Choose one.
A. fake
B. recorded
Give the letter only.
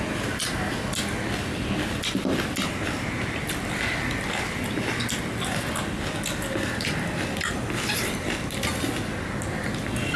B